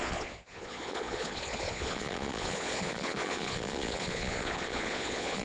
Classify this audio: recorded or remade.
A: remade